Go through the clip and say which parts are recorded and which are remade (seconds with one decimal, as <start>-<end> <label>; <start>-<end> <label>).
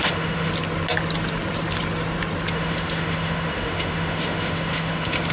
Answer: 0.0-0.5 remade; 0.5-2.5 recorded; 2.5-5.3 remade